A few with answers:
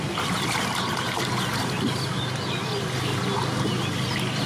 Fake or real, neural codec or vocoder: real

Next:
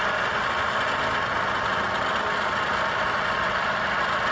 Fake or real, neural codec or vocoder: real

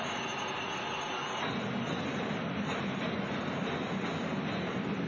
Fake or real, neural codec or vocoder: real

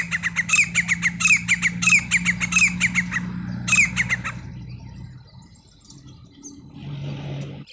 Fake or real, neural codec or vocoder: real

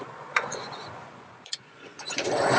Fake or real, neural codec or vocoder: fake, vocoder, Vocos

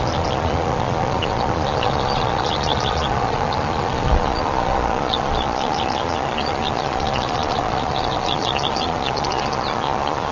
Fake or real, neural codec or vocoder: fake, vocoder, Vocos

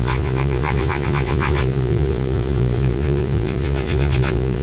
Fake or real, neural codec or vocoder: fake, vocoder, Vocos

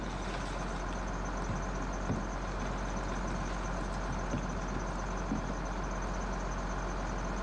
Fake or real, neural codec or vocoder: real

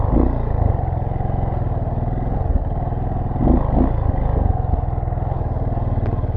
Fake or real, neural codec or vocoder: real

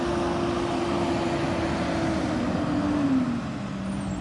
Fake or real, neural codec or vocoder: real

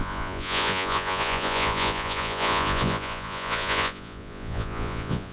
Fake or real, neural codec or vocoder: fake, vocoder, Vocos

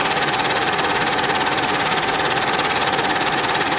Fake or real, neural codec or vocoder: fake, vocoder, Vocos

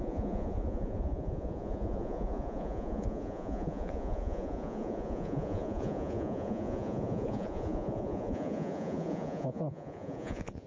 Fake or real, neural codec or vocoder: fake, vocoder, Vocos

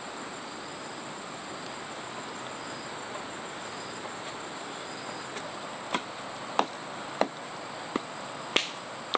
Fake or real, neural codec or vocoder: real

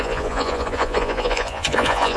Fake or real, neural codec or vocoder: fake, vocoder, Vocos